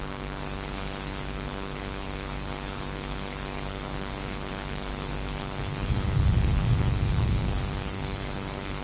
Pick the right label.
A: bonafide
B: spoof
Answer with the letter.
B